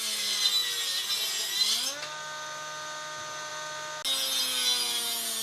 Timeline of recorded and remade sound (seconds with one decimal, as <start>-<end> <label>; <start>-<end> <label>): 0.0-5.4 recorded